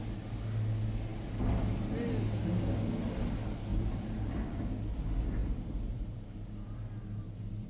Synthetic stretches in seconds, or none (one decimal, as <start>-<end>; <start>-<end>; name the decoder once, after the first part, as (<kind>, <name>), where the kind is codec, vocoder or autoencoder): 3.7-4.6 (vocoder, BigVGAN v2); 5.4-6.3